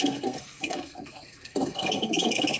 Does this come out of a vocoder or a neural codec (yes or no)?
yes